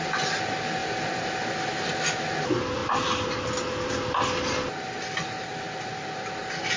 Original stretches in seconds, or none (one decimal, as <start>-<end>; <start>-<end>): 0.0-6.8